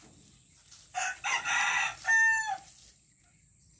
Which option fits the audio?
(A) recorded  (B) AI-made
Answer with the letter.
A